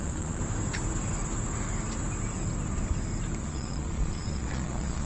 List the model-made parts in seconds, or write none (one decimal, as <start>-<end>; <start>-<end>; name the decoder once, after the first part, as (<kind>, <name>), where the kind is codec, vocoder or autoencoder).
0.0-0.4 (vocoder, Vocos); 3.4-5.1

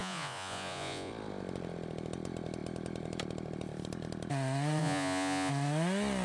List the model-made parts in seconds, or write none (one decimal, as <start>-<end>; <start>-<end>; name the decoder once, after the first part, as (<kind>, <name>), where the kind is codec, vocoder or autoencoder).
0.0-1.1 (vocoder, Vocos); 4.8-5.5

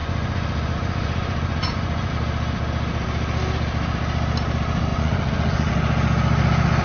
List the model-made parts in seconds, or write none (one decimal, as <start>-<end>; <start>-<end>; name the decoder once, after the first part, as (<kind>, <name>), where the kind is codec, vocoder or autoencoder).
0.0-2.1 (vocoder, Vocos); 4.9-5.7

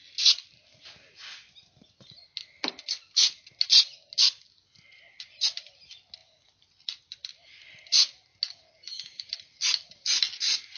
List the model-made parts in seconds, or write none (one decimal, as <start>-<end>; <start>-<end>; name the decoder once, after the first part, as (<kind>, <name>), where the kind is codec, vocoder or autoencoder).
none

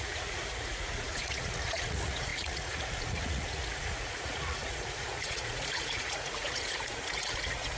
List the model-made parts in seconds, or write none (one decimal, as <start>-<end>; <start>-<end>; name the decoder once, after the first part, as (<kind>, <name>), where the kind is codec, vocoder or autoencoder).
0.0-7.8 (vocoder, Vocos)

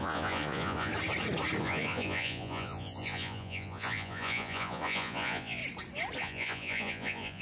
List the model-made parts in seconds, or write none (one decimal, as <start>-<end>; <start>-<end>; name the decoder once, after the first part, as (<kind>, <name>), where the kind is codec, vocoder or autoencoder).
0.0-0.9 (vocoder, Vocos); 1.6-5.6; 6.2-7.4

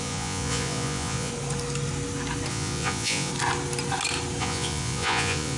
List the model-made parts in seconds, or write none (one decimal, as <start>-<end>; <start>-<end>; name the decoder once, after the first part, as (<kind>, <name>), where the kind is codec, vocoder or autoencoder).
0.0-1.3 (vocoder, Vocos); 2.5-3.3; 4.4-5.6